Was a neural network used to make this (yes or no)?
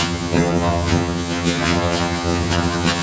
yes